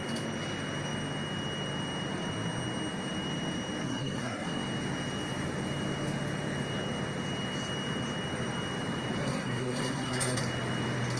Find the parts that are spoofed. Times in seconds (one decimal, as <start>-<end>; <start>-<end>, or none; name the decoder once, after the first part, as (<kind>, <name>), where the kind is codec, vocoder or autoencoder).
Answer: 3.8-4.6 (codec, SNAC); 9.2-10.4